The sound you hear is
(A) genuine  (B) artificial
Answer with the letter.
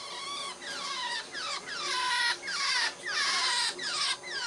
A